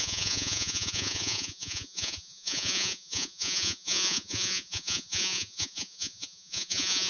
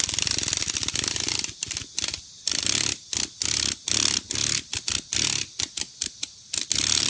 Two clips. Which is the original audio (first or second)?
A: second